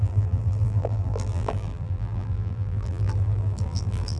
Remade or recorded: remade